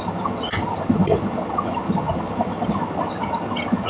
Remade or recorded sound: remade